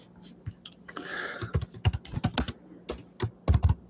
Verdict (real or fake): real